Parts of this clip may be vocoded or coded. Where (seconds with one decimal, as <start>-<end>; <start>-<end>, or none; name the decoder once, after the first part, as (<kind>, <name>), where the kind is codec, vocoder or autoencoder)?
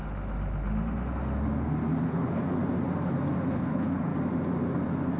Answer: 2.0-2.6 (codec, HILCodec); 3.5-4.1